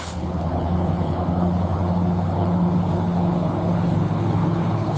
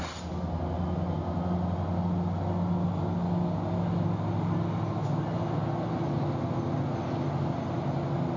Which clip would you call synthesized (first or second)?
first